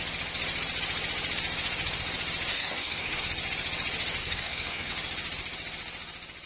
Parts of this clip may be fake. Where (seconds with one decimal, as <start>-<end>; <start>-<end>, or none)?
2.5-3.2; 4.2-4.9